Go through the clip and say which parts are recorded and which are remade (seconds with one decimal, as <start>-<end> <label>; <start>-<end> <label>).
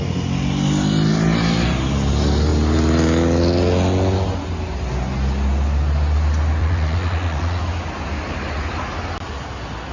0.0-6.6 recorded; 6.6-7.6 remade; 7.6-9.9 recorded